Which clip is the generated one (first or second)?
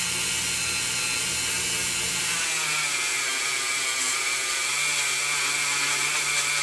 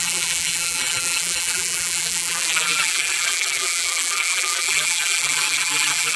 second